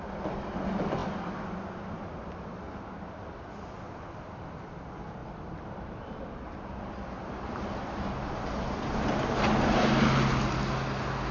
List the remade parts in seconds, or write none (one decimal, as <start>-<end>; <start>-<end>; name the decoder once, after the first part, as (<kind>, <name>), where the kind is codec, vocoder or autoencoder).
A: 5.2-8.1 (vocoder, BigVGAN v2)